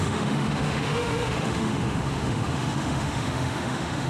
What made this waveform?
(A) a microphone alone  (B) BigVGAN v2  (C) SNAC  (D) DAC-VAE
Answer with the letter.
D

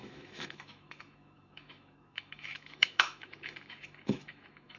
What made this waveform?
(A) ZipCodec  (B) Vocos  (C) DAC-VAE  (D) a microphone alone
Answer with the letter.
C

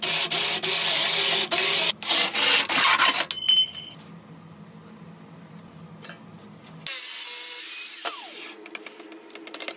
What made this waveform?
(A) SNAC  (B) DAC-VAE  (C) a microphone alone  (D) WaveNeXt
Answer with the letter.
C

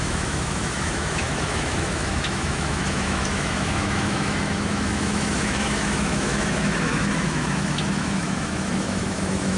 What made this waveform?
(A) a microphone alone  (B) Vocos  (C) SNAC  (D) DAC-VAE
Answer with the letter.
D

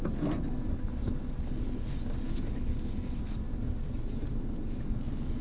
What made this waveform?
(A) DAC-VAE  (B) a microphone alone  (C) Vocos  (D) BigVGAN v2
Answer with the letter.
B